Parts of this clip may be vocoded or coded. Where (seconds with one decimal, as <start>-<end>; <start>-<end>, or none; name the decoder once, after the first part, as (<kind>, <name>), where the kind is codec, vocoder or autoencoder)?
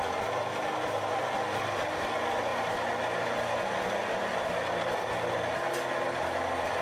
none